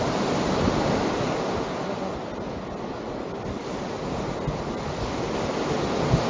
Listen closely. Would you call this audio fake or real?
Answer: real